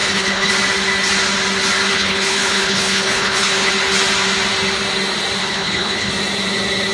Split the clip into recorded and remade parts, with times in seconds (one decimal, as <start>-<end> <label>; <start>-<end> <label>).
0.0-0.5 remade; 0.5-1.9 recorded; 1.9-3.7 remade; 3.7-5.4 recorded; 5.4-6.1 remade; 6.1-6.9 recorded